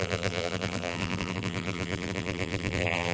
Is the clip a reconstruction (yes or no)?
yes